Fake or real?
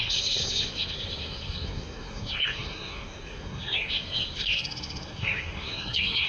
fake